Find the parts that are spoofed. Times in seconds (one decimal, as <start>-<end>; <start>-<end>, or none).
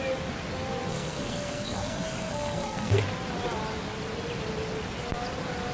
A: 0.9-3.0